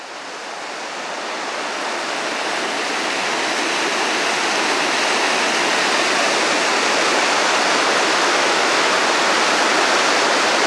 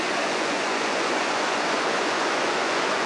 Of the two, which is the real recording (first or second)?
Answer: first